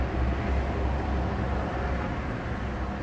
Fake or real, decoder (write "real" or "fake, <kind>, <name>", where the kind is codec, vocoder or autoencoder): real